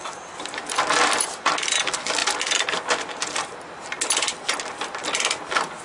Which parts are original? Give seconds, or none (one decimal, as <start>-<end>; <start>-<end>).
0.0-5.8